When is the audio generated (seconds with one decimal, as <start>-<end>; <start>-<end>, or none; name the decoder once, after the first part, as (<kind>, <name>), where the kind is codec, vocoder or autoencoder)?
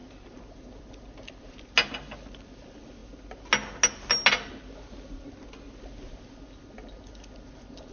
none